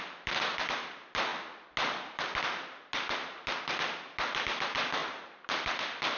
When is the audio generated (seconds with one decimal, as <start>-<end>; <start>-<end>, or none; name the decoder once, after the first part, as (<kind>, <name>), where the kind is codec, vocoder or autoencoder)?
none